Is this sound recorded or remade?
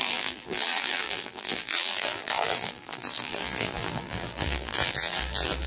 remade